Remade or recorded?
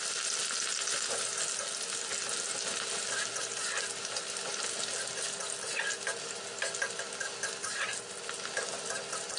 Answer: recorded